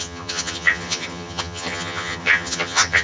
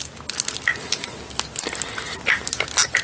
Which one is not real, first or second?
first